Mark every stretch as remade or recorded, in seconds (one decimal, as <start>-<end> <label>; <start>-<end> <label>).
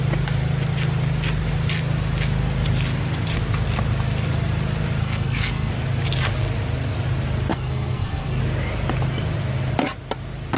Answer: 0.0-5.0 recorded; 5.0-5.7 remade; 5.7-7.5 recorded; 7.5-8.4 remade; 8.4-10.6 recorded